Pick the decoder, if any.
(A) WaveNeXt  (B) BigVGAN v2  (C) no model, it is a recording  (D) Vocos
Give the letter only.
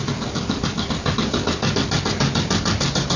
C